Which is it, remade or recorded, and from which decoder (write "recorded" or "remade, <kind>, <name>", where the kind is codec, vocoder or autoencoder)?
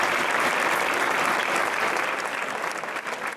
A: recorded